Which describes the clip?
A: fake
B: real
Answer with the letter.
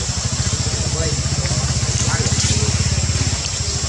B